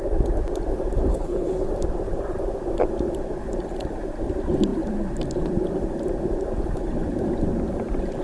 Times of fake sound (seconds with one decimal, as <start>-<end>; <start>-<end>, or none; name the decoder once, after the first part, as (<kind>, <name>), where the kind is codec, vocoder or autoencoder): 1.1-1.7 (codec, HILCodec)